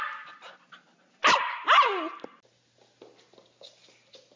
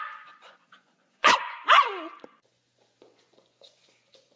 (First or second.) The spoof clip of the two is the second